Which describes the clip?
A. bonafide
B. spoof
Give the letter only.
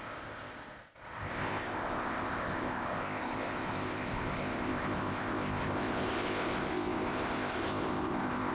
B